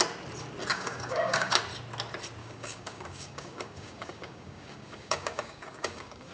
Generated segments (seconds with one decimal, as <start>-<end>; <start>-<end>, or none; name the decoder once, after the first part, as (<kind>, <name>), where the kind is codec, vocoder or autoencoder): 0.7-1.6 (codec, DAC); 2.4-6.3